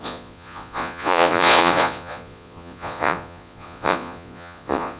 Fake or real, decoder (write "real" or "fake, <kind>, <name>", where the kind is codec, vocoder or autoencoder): fake, vocoder, Vocos